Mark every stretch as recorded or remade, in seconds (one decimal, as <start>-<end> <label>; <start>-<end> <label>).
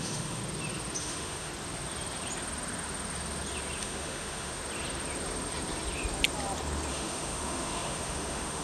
0.0-0.4 remade; 0.4-1.0 recorded; 1.0-1.5 remade; 1.5-3.8 recorded; 3.8-4.6 remade; 4.6-6.9 recorded; 6.9-8.6 remade